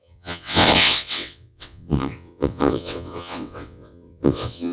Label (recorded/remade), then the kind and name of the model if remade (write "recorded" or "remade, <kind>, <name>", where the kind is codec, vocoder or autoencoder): remade, vocoder, WaveNeXt